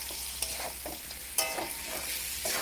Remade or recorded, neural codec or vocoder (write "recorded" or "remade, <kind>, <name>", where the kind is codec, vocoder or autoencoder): recorded